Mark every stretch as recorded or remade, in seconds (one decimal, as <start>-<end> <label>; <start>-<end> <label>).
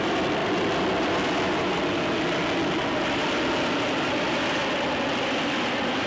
0.0-6.1 recorded